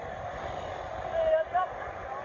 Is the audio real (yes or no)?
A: yes